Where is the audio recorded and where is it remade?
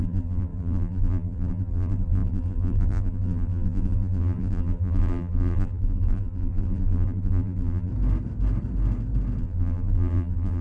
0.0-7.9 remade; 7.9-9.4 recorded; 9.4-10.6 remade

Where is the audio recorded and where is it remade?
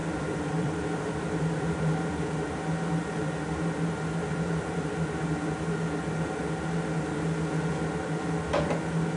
0.0-2.5 remade; 2.5-9.2 recorded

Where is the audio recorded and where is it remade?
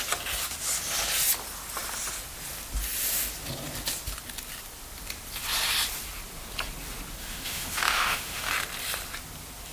0.0-7.2 recorded; 7.2-8.5 remade; 8.5-9.7 recorded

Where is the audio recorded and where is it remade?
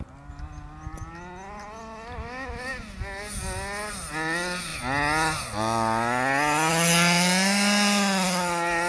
0.0-8.9 recorded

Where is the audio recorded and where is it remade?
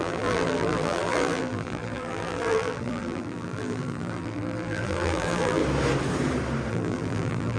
0.0-5.6 remade; 5.6-6.7 recorded; 6.7-7.6 remade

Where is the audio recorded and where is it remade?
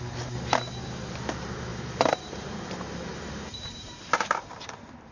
0.0-1.7 recorded; 1.7-5.1 remade